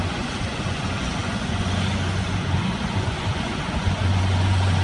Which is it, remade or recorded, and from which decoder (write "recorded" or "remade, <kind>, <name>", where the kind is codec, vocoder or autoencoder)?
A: remade, vocoder, Vocos